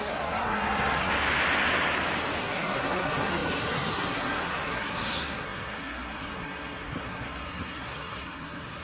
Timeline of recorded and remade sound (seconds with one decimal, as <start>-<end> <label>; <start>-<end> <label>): 0.0-1.1 remade; 1.1-2.4 recorded; 2.4-8.8 remade